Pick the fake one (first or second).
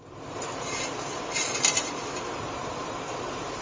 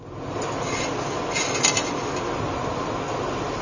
first